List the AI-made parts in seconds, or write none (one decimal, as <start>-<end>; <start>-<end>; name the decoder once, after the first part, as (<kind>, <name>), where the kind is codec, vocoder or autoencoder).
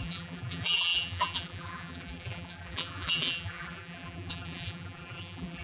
0.0-5.6 (vocoder, BigVGAN v2)